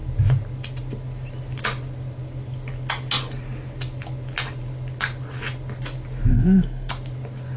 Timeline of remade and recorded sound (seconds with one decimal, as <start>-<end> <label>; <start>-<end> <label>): 0.0-6.3 recorded; 6.3-6.9 remade; 6.9-7.6 recorded